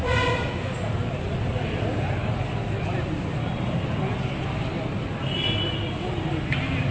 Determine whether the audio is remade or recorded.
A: recorded